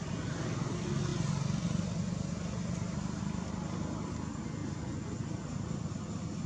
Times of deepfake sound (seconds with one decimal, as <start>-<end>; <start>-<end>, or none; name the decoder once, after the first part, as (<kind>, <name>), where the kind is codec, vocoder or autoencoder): 4.6-5.3 (vocoder, Vocos)